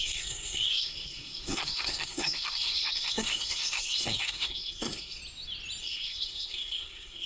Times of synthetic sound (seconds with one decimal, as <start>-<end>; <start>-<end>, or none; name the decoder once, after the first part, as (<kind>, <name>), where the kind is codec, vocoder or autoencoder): 0.0-5.2 (codec, SNAC); 5.8-7.3